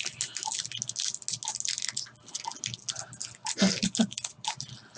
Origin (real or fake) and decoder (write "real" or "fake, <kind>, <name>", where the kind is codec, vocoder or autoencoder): real